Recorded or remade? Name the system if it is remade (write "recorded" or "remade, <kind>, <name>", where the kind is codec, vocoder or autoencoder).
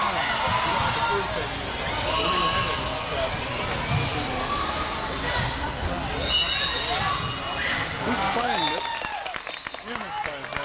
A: recorded